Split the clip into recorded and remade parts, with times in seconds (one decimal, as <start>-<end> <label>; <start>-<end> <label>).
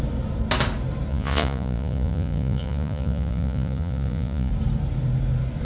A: 0.0-1.1 recorded; 1.1-4.5 remade; 4.5-5.6 recorded